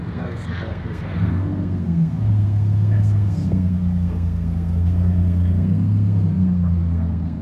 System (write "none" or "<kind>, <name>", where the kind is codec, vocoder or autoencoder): codec, SNAC